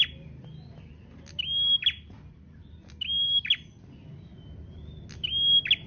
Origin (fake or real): real